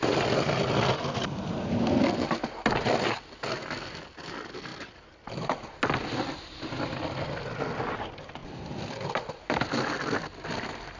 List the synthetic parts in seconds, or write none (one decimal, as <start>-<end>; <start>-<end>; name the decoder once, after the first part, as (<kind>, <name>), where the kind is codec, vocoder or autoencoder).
none